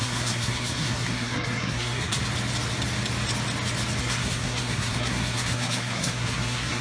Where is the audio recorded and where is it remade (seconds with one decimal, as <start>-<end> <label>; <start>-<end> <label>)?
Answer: 0.0-2.2 remade; 2.2-4.0 recorded; 4.0-6.8 remade

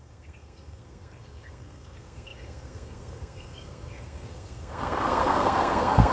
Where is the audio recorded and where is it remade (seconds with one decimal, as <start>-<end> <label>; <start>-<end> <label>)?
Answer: 0.0-6.1 remade